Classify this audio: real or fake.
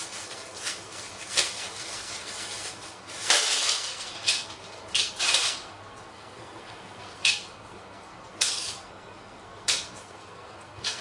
fake